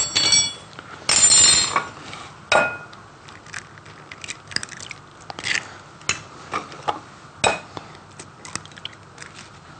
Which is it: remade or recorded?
recorded